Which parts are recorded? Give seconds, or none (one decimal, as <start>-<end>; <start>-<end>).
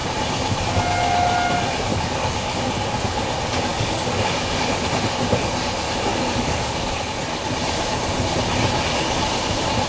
0.0-1.9; 2.7-3.7; 4.8-6.1; 7.0-9.9